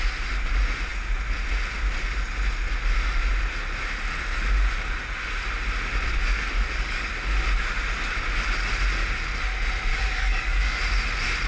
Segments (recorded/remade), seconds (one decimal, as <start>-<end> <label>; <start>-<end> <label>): 0.0-6.2 recorded; 6.2-7.1 remade; 7.1-9.9 recorded; 9.9-10.8 remade; 10.8-11.5 recorded